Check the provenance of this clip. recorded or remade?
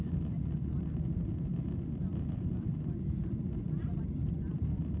recorded